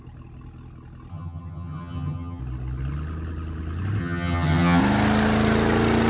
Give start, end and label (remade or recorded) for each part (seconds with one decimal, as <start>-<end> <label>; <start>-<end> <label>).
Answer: 0.0-1.1 recorded; 1.1-2.4 remade; 2.4-4.0 recorded; 4.0-4.8 remade; 4.8-6.1 recorded